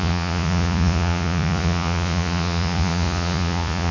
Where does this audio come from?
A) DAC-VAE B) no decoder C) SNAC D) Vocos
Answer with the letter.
D